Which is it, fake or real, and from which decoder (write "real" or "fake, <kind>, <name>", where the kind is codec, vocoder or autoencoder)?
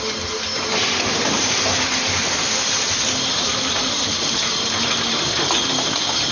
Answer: real